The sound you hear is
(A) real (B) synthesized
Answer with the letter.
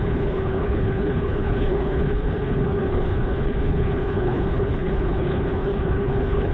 B